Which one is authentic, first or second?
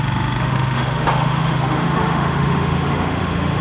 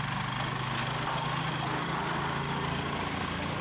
second